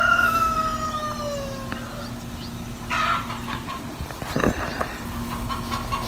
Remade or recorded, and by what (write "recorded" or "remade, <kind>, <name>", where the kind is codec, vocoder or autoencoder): recorded